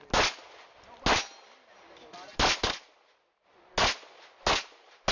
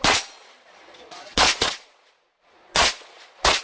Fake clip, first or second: second